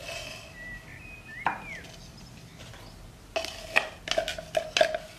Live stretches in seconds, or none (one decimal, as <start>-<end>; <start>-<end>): 0.0-5.2